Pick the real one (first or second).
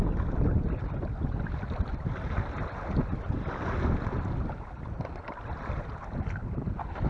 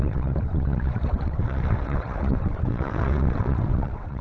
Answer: first